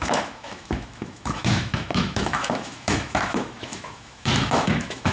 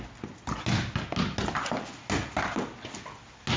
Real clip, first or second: second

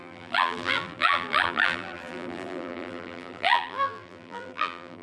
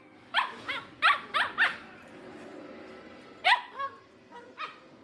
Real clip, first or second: second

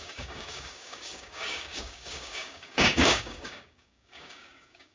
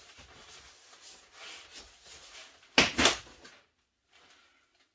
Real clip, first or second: second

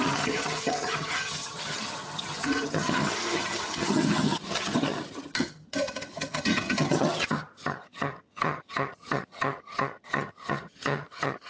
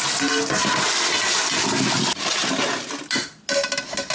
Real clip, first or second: second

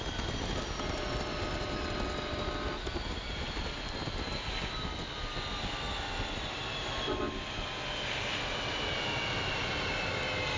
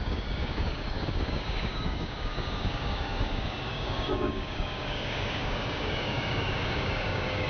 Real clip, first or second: first